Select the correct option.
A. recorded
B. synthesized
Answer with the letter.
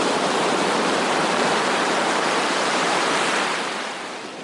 B